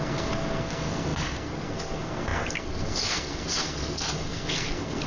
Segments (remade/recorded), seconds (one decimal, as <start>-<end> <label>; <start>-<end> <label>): 0.0-5.1 remade